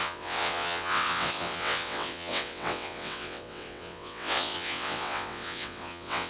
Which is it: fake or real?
fake